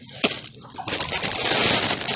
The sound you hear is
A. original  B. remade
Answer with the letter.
A